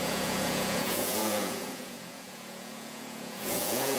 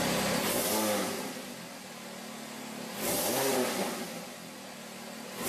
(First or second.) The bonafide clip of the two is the second